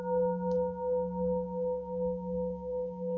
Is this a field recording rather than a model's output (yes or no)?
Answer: no